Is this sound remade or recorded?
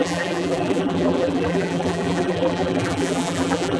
remade